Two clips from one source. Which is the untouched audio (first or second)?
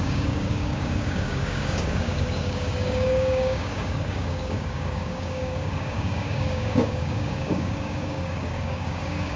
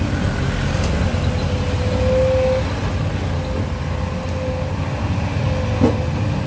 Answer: second